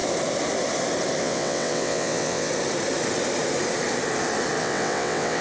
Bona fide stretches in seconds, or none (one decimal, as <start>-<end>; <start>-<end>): 0.0-1.2; 2.5-4.6